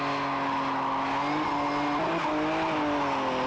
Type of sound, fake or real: real